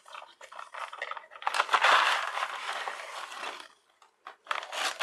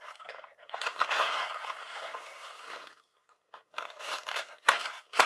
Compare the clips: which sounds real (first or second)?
first